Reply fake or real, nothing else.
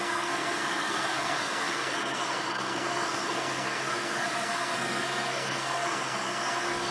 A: fake